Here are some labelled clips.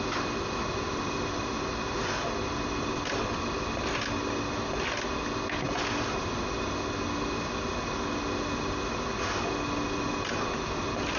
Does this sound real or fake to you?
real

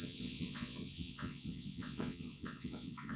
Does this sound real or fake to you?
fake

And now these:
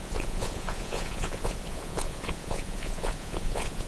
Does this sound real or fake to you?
fake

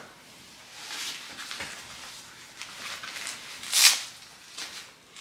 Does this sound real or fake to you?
real